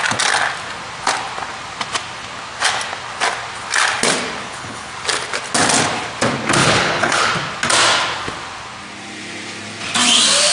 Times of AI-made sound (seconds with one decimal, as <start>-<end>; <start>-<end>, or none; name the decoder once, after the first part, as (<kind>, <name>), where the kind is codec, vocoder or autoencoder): 4.4-4.9 (codec, HILCodec); 6.6-7.3